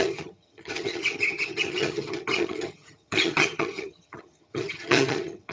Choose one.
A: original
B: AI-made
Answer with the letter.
B